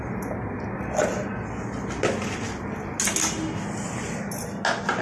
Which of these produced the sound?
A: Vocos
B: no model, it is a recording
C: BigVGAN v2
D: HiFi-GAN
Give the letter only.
B